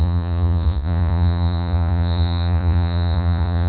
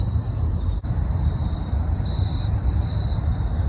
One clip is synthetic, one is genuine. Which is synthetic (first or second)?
first